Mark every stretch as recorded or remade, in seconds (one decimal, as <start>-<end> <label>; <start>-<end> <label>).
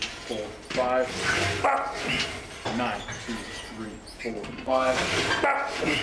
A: 0.0-4.3 recorded; 4.3-5.1 remade; 5.1-6.0 recorded